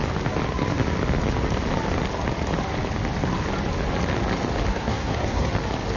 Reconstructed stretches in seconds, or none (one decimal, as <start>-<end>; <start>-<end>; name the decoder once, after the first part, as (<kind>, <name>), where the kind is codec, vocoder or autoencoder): 4.7-5.5 (codec, SNAC)